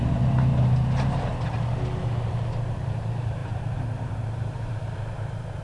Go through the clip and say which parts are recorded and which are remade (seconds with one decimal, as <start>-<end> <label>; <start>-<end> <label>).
0.0-0.5 remade; 0.5-2.6 recorded; 2.6-5.6 remade